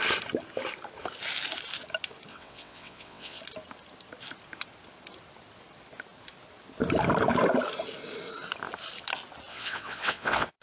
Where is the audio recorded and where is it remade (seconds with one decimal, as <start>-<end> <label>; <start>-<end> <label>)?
0.0-2.3 recorded; 2.3-3.4 remade; 3.4-9.5 recorded; 9.5-10.6 remade